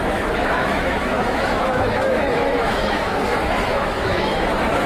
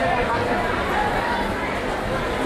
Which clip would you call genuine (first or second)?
second